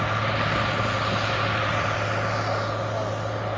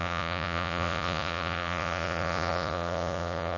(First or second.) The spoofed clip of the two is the second